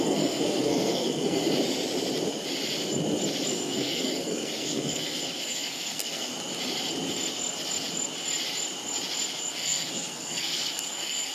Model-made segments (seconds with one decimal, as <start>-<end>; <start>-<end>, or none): 0.0-1.4; 3.5-6.3; 9.5-11.3